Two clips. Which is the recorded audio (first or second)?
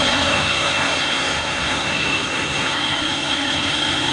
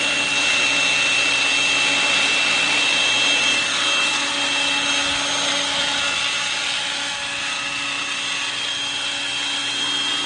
second